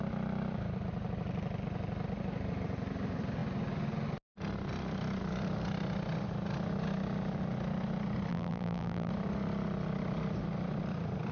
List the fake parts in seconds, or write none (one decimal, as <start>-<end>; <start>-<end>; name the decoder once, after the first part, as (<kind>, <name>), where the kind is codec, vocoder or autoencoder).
8.3-9.1 (vocoder, BigVGAN v2)

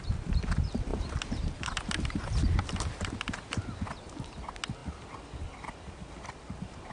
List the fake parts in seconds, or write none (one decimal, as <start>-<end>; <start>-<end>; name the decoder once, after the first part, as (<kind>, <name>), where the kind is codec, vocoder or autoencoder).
0.9-3.8 (vocoder, BigVGAN v2)

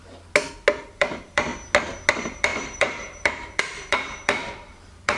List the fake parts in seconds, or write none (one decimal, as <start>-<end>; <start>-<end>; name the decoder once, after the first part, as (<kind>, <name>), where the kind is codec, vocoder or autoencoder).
0.8-1.5 (vocoder, BigVGAN v2); 2.1-5.2

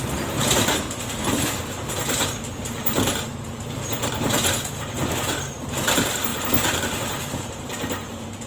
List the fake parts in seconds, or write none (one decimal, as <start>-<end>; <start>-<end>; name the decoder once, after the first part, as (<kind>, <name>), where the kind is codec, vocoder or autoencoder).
0.0-8.5 (vocoder, BigVGAN v2)